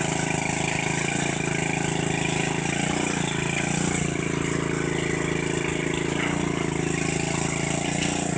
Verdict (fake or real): real